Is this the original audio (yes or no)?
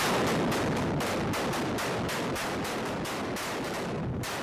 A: no